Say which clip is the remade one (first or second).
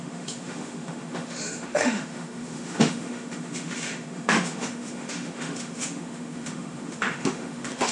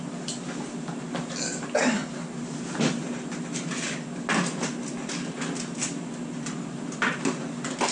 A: first